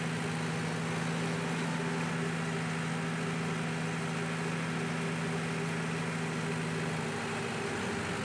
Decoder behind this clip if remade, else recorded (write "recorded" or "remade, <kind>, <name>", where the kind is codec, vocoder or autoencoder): recorded